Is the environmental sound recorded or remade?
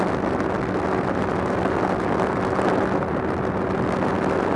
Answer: recorded